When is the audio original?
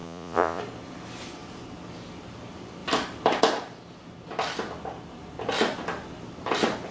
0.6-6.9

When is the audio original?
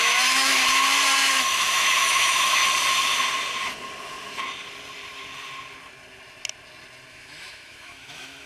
0.6-1.3; 2.6-7.1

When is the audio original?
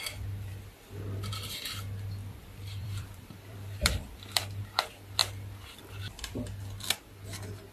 0.0-2.2; 4.6-7.7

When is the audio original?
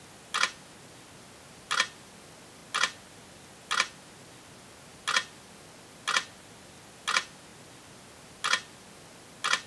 0.0-9.7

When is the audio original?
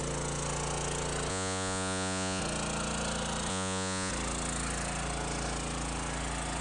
0.0-1.3; 2.4-3.5; 4.1-6.6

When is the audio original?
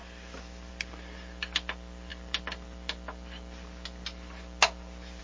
0.7-5.2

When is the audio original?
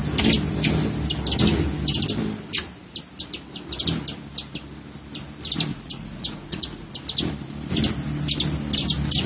0.0-5.7; 6.9-9.3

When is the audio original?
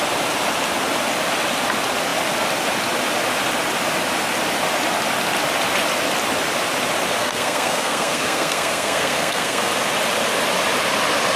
0.0-7.2; 9.7-11.4